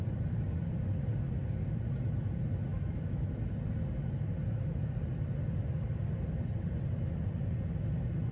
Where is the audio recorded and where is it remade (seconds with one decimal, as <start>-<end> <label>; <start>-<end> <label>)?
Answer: 0.0-2.7 recorded; 2.7-3.3 remade; 3.3-8.3 recorded